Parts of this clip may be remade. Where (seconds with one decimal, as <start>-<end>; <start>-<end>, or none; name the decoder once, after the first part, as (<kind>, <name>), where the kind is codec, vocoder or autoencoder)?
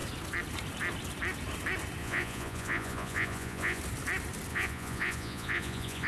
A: 2.0-3.8 (vocoder, Vocos); 4.5-6.1